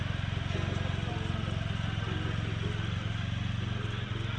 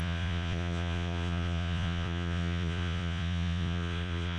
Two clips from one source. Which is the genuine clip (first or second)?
first